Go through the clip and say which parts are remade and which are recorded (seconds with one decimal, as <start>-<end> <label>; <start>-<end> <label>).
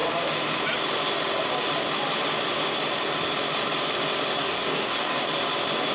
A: 0.0-4.4 recorded; 4.4-5.2 remade; 5.2-5.9 recorded